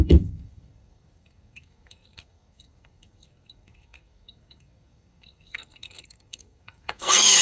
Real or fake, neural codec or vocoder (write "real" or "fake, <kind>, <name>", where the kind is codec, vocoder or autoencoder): fake, codec, SNAC